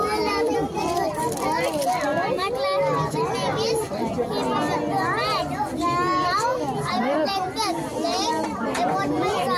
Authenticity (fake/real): real